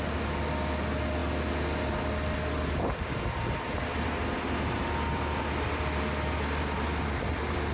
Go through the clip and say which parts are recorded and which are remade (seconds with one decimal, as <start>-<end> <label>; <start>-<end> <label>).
0.0-7.7 recorded